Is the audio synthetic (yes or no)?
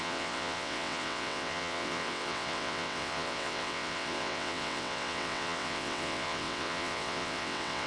yes